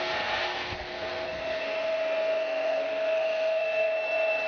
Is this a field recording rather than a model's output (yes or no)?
no